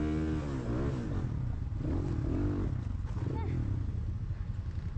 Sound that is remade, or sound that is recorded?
recorded